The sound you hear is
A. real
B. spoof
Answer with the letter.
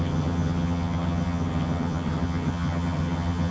B